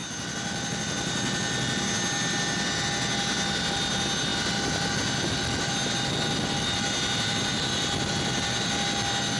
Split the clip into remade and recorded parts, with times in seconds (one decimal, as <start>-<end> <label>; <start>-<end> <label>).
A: 0.0-9.4 recorded